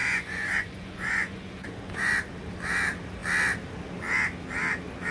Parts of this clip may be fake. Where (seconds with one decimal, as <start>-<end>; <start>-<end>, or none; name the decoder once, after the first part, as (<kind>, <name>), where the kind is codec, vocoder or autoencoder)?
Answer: 0.0-2.1 (vocoder, Vocos)